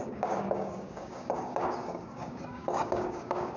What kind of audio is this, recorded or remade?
remade